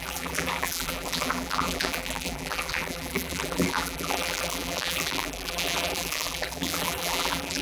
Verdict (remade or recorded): remade